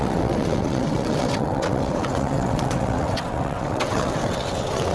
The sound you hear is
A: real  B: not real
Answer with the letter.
B